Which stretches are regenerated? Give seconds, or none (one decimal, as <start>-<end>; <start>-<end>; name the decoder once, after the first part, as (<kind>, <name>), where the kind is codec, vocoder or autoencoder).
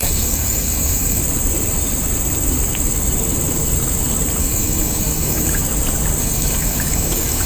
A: 0.0-1.2 (codec, DAC); 4.4-5.6; 6.2-7.5